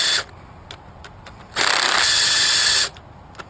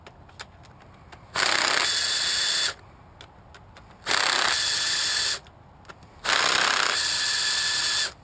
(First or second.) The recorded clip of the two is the second